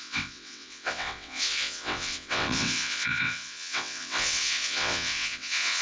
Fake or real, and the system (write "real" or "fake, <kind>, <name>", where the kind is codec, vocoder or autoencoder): fake, vocoder, WaveNeXt